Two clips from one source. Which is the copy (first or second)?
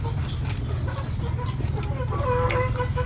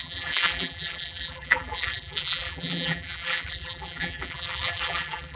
second